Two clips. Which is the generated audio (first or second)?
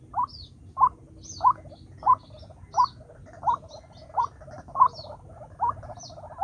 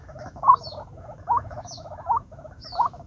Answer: second